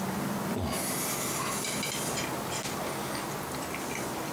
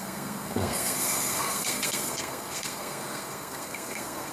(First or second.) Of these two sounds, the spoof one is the second